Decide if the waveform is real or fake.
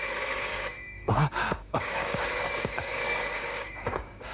fake